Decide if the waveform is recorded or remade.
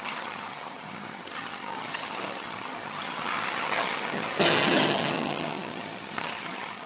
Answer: remade